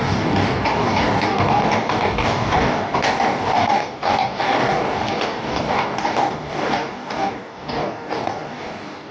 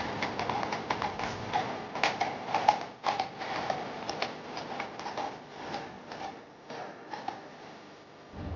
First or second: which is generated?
first